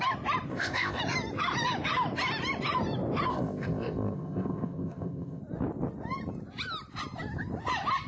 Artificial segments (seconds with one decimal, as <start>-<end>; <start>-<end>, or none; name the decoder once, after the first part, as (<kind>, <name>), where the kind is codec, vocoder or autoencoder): 0.5-1.0 (codec, ZipCodec); 3.3-5.4